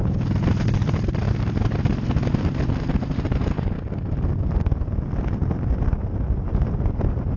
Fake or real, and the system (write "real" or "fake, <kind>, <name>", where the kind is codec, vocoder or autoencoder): real